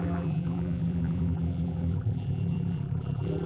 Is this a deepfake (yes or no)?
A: yes